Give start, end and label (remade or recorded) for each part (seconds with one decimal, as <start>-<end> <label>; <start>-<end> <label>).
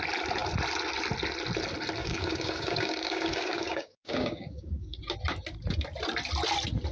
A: 0.0-2.0 recorded; 2.0-5.0 remade; 5.0-6.9 recorded